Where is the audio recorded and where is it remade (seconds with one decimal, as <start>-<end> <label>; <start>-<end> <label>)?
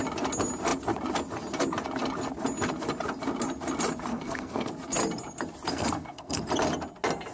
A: 0.0-4.1 recorded; 4.1-4.7 remade; 4.7-5.7 recorded; 5.7-6.4 remade; 6.4-7.3 recorded